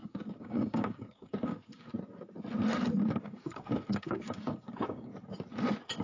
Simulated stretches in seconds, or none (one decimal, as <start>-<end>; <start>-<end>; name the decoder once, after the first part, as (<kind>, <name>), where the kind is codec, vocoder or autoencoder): 0.0-1.9 (codec, DAC); 3.1-5.1